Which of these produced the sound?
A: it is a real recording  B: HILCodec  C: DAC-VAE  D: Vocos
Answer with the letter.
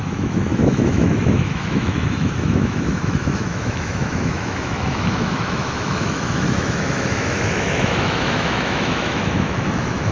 C